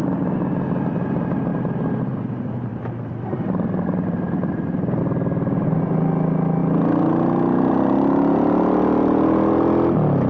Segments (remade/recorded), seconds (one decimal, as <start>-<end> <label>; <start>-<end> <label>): 0.0-2.7 recorded; 2.7-5.0 remade; 5.0-10.3 recorded